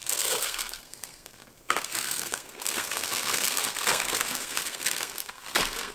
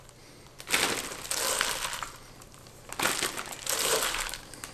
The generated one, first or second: first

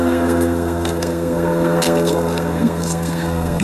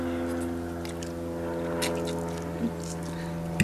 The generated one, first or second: first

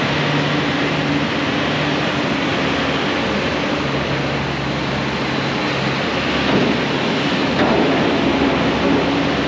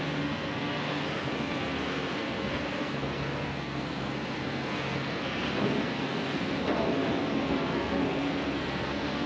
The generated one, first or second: second